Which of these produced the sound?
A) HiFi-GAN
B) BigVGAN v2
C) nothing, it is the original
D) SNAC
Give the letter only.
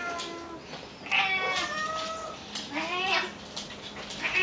C